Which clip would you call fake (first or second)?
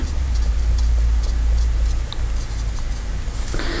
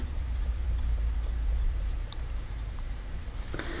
second